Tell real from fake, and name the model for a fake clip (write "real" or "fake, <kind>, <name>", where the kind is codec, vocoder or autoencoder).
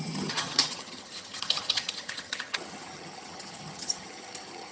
fake, vocoder, HiFi-GAN